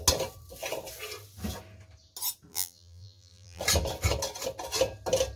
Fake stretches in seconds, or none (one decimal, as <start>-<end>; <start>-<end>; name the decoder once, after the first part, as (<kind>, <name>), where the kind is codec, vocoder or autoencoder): 2.5-3.6 (vocoder, BigVGAN v2)